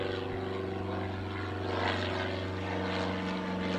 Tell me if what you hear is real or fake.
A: real